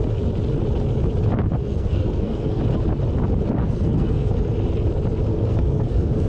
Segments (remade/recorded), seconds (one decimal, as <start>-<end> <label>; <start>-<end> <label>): 0.0-1.6 recorded; 1.6-2.6 remade; 2.6-3.6 recorded; 3.6-4.3 remade; 4.3-5.3 recorded; 5.3-6.3 remade